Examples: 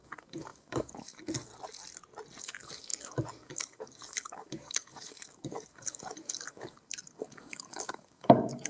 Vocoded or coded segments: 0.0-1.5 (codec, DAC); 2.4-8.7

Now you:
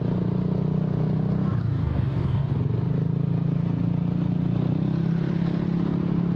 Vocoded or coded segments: 1.6-2.5 (codec, DAC)

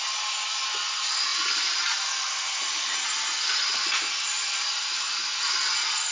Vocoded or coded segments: none